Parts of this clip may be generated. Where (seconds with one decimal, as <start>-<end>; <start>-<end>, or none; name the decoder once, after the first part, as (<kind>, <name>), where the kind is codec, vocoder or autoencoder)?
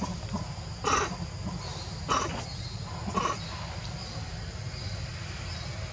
none